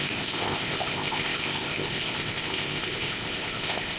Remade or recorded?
remade